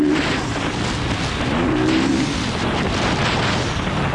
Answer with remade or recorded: recorded